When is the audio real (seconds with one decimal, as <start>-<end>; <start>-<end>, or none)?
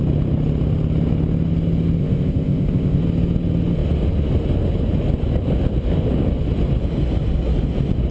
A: 0.0-2.0; 3.0-8.1